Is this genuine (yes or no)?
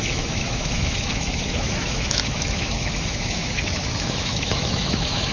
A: no